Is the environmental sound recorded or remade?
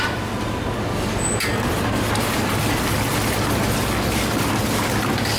recorded